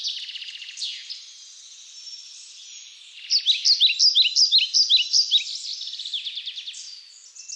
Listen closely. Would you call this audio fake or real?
real